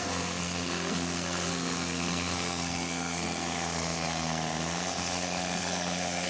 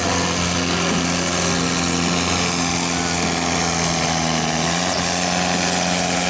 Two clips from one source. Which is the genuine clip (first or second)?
second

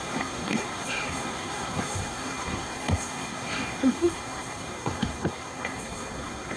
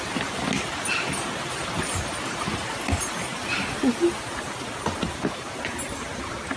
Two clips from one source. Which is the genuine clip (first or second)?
second